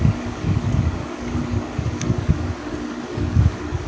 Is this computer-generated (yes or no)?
yes